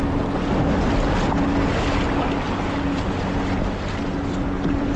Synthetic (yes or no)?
no